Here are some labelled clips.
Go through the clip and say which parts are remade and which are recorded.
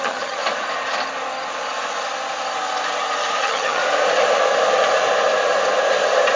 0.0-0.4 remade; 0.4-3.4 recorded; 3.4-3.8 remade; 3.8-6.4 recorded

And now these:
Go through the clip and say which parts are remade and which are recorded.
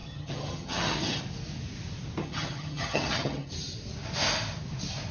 0.0-1.2 remade; 1.2-2.2 recorded; 2.2-3.5 remade; 3.5-5.1 recorded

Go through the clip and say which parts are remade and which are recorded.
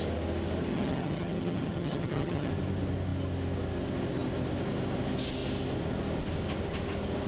0.0-0.7 recorded; 0.7-2.5 remade; 2.5-7.3 recorded